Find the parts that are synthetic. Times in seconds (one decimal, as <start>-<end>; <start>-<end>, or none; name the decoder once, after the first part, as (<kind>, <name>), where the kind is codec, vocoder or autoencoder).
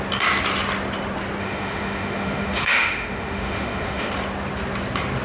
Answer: 1.4-4.1 (autoencoder, DAC-VAE)